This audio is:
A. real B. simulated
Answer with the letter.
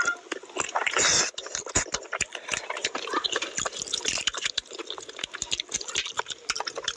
A